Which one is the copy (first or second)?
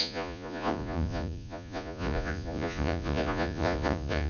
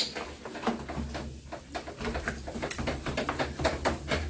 first